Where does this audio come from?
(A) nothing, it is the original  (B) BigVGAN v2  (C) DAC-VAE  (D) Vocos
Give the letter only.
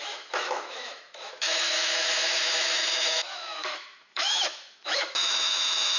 C